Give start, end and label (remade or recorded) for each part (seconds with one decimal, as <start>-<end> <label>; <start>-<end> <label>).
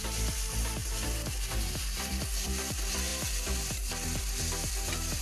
0.0-5.2 recorded